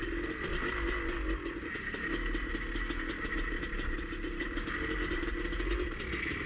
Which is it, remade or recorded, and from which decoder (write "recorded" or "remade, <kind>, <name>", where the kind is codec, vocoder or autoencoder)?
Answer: recorded